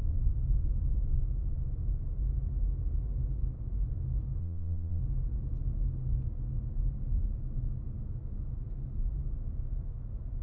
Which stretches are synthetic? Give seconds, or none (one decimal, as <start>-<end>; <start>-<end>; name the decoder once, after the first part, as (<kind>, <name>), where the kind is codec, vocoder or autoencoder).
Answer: 4.4-5.0 (vocoder, Vocos)

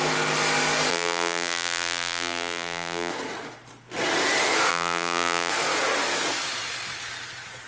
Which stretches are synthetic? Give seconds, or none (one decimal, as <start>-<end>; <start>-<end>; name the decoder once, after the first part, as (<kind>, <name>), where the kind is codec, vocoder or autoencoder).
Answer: 0.9-3.1 (vocoder, BigVGAN v2); 4.7-5.5